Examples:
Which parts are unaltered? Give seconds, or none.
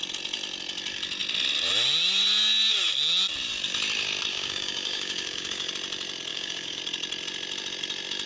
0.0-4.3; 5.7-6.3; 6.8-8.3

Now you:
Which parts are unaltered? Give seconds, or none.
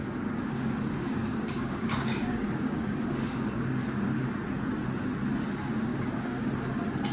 4.3-5.9; 6.5-7.1